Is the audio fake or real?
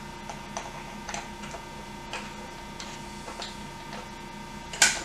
real